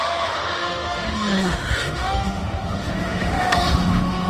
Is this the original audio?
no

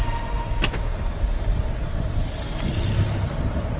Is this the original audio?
yes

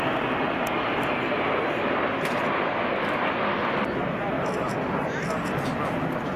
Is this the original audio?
yes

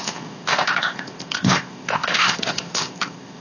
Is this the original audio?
no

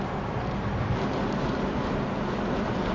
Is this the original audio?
yes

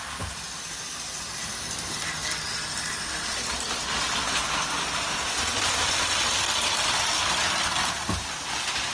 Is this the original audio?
yes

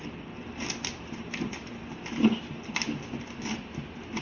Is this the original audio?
yes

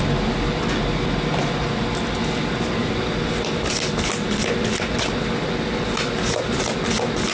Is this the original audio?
yes